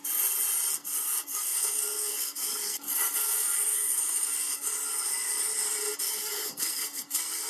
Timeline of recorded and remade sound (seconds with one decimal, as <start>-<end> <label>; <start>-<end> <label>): 0.0-0.7 recorded; 0.7-5.5 remade; 5.5-6.0 recorded; 6.0-7.5 remade